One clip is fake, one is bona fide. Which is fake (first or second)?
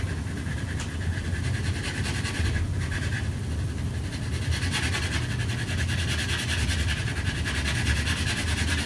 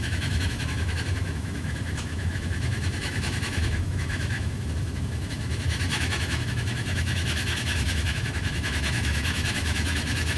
second